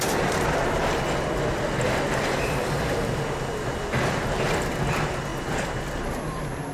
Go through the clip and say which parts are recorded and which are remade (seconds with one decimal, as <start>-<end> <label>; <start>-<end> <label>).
0.0-6.7 recorded